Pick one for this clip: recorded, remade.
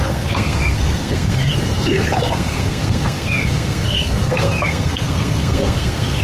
remade